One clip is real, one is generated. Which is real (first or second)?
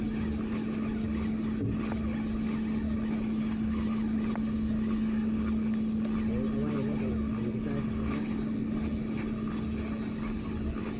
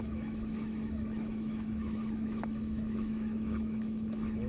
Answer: first